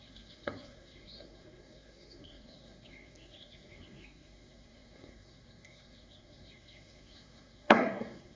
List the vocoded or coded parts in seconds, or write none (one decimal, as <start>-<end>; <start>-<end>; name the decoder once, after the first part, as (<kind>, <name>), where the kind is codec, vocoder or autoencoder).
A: 0.0-8.4 (codec, SNAC)

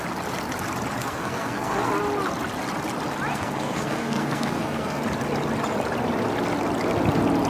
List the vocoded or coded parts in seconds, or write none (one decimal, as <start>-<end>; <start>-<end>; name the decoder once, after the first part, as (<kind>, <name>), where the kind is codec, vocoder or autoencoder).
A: 1.0-1.9 (codec, SNAC); 3.3-5.0